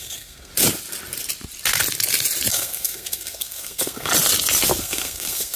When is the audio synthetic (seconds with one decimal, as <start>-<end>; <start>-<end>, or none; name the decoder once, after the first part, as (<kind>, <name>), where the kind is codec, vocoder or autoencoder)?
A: 0.0-0.5 (codec, SNAC); 2.5-4.1; 4.8-5.6